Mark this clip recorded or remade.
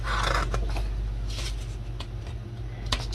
recorded